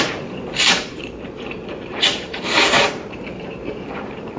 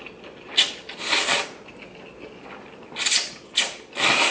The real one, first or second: second